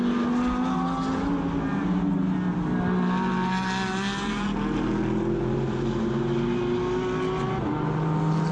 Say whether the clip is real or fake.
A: real